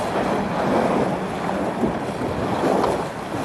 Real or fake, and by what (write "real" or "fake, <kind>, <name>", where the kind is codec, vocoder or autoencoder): real